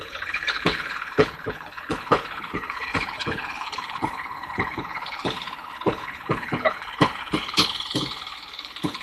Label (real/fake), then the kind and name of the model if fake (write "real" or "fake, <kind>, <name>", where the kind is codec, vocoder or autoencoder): fake, codec, HILCodec